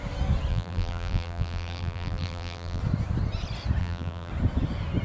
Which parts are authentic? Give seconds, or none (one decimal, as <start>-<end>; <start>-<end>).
0.0-0.5; 2.8-3.8; 4.3-5.0